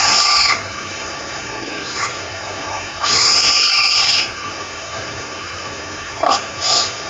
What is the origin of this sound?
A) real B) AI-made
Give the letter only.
B